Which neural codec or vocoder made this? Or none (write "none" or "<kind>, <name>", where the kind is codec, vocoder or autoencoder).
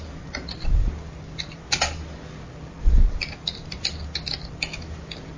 none